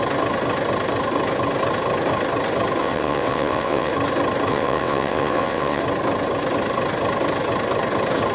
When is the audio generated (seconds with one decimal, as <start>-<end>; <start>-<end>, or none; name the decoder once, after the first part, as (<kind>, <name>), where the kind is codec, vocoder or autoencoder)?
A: 2.8-3.9 (vocoder, WaveNeXt); 4.5-5.8